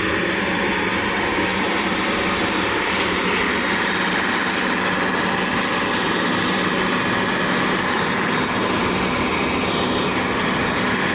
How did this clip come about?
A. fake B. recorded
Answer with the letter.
B